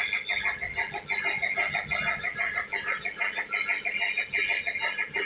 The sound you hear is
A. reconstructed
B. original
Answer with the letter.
B